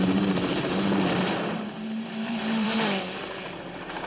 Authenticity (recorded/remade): remade